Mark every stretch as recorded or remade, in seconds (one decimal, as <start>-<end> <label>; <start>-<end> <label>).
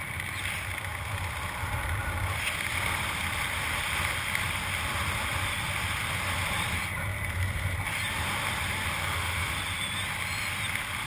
0.0-9.0 recorded; 9.0-9.5 remade; 9.5-11.1 recorded